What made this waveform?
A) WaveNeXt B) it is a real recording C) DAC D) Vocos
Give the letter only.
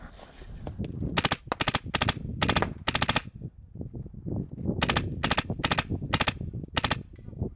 B